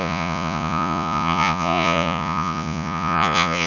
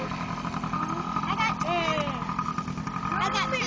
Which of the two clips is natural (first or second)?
second